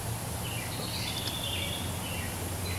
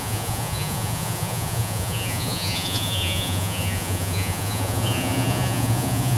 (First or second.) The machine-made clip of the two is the second